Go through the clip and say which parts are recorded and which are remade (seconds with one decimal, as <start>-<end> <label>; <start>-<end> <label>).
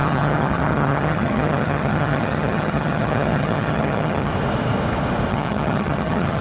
0.0-4.3 remade; 4.3-5.3 recorded; 5.3-6.4 remade